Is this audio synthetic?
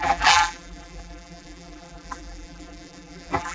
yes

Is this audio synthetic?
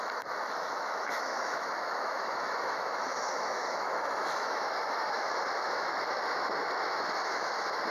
yes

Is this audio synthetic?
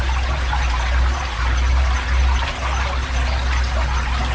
no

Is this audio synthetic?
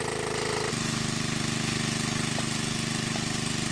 no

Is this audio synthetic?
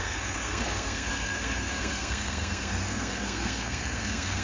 yes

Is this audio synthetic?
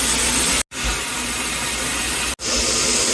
no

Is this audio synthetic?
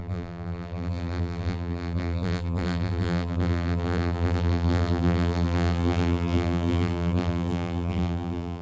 yes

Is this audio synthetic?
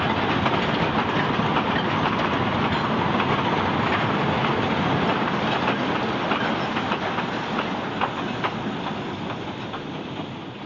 no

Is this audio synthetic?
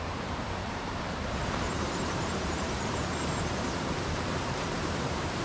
yes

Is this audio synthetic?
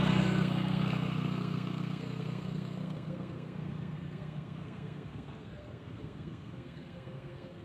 yes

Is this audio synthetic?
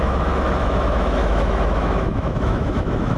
yes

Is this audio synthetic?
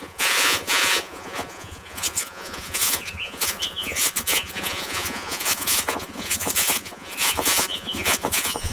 yes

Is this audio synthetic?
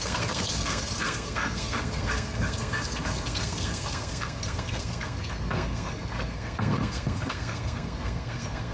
yes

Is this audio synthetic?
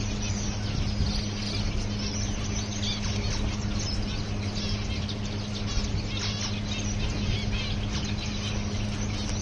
no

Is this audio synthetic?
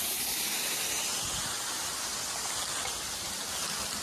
no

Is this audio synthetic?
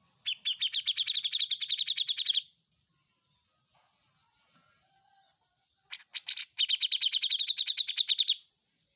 no